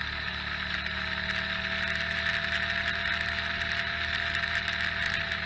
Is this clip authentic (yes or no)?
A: yes